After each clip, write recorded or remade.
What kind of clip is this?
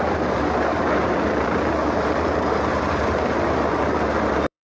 remade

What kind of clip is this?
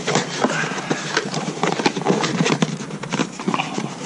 remade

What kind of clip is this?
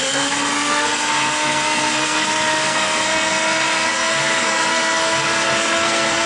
remade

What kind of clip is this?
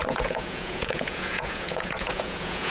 remade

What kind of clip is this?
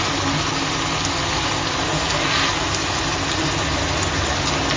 recorded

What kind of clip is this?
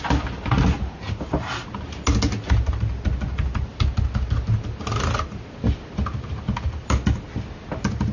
recorded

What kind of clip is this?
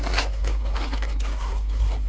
remade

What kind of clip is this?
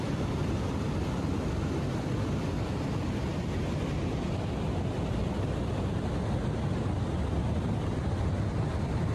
recorded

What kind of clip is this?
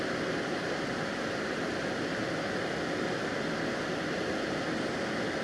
recorded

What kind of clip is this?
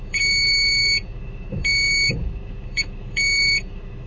remade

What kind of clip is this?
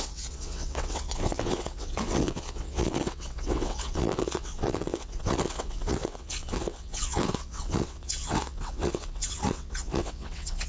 remade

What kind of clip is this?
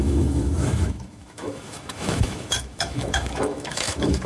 remade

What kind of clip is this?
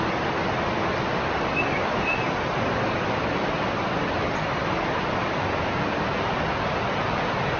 recorded